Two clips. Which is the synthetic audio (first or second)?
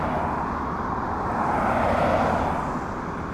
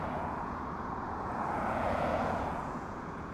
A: second